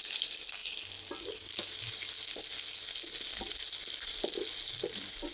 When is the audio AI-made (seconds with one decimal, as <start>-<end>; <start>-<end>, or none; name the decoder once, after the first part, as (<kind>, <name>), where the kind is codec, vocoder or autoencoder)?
0.0-0.6 (vocoder, BigVGAN v2); 3.8-5.3